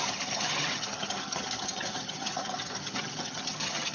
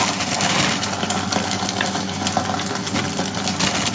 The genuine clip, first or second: second